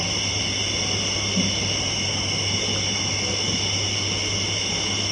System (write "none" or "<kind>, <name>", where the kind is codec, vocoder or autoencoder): none